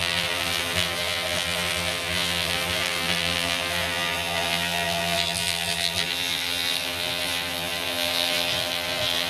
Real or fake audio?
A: fake